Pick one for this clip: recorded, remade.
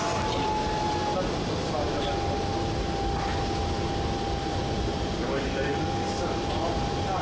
recorded